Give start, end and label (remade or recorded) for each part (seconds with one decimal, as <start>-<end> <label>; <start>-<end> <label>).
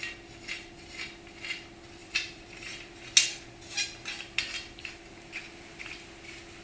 0.0-2.0 recorded; 2.0-3.1 remade; 3.1-6.6 recorded